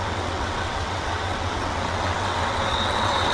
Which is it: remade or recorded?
remade